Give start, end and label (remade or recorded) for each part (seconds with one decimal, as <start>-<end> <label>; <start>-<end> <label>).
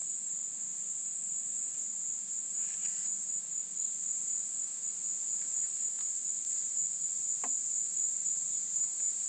0.0-8.2 recorded; 8.2-9.3 remade